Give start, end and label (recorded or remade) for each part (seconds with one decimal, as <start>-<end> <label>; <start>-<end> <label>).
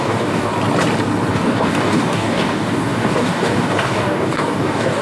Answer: 0.0-0.5 remade; 0.5-1.3 recorded; 1.3-5.0 remade